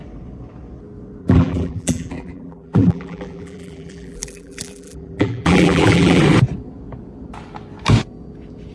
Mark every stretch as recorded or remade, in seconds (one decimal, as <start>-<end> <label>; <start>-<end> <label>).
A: 0.0-1.2 recorded; 1.2-6.2 remade; 6.2-8.7 recorded